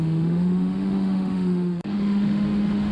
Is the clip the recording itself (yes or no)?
no